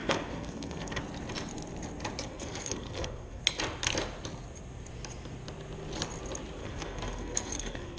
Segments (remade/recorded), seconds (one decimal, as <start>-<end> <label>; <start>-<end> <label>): 0.0-1.0 remade; 1.0-2.3 recorded; 2.3-3.4 remade; 3.4-6.6 recorded; 6.6-8.0 remade